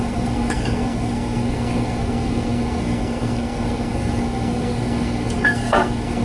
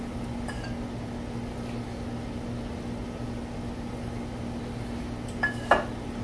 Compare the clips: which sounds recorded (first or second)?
second